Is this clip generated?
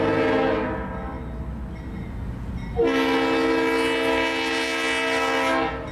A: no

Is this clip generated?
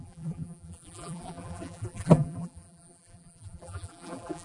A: yes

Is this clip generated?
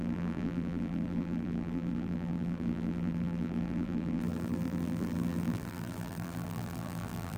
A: yes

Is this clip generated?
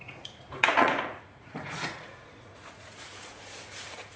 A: yes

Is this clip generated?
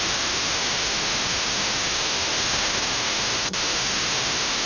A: yes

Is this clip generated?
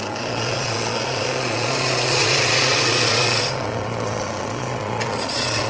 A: yes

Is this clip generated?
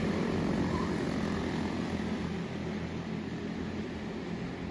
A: no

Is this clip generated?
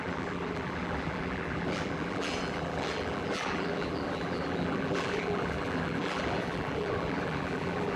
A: yes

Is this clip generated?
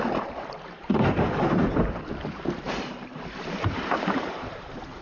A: yes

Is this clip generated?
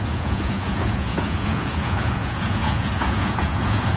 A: yes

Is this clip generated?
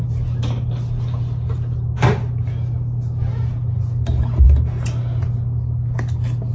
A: no